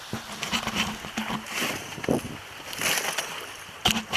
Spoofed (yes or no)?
no